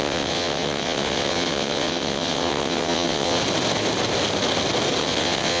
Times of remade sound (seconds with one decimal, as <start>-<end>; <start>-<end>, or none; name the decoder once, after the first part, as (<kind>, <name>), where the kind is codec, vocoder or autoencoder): 0.0-3.4 (vocoder, WaveNeXt); 5.0-5.6